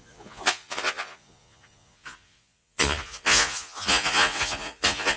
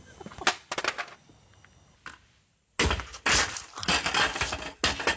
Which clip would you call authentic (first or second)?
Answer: second